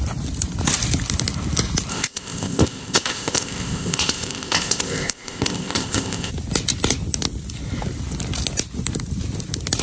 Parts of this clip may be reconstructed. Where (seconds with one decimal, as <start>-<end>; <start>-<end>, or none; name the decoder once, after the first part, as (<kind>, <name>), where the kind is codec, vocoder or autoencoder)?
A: 1.9-6.3 (codec, ZipCodec)